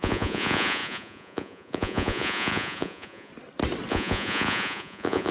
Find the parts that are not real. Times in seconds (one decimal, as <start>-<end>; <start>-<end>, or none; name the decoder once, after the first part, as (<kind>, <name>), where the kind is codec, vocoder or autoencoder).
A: 0.0-3.3 (vocoder, Vocos); 3.9-5.3